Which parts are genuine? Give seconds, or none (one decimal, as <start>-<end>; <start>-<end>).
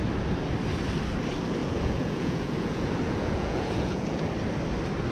0.0-1.6; 4.3-5.1